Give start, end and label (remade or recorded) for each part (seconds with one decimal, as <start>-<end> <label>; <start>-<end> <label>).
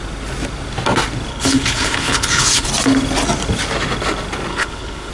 0.0-1.3 recorded; 1.3-2.7 remade; 2.7-4.5 recorded; 4.5-5.1 remade